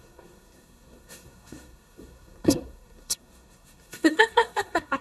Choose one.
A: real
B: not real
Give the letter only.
B